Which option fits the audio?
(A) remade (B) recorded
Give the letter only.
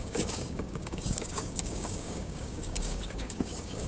A